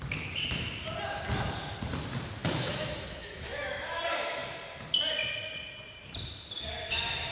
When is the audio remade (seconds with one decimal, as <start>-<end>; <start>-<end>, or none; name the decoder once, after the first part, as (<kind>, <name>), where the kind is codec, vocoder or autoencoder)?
2.4-4.0 (autoencoder, DAC-VAE)